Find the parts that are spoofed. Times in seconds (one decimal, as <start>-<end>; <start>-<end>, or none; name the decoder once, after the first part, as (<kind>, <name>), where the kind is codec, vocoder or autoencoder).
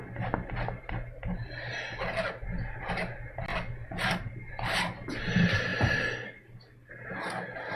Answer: none